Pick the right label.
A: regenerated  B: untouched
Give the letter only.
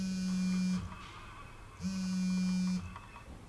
B